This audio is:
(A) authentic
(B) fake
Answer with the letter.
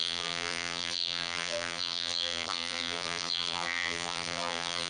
B